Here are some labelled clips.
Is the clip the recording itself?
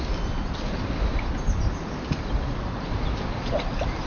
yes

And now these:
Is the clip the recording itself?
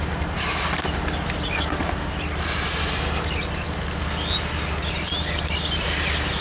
yes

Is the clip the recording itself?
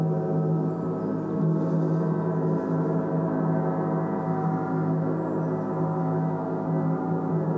yes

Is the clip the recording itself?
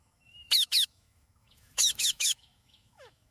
no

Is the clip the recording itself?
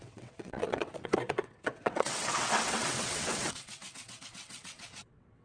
no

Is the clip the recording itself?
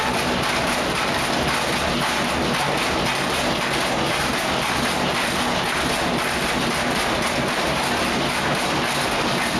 yes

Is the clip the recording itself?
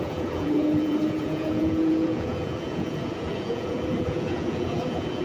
no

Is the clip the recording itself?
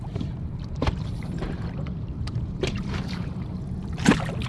no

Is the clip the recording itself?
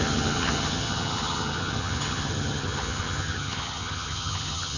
no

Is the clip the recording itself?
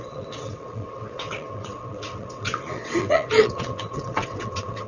no